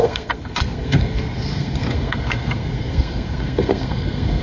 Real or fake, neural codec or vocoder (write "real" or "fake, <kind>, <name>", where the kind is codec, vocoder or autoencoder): fake, codec, SNAC